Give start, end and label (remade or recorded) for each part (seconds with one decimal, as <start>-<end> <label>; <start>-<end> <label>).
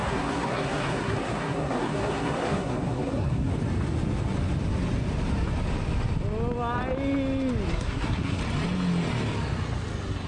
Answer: 0.0-3.5 remade; 3.5-7.7 recorded; 7.7-8.4 remade; 8.4-10.3 recorded